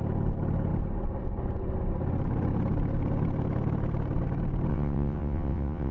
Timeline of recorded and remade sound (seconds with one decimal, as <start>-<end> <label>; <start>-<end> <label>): 0.0-4.7 recorded; 4.7-5.9 remade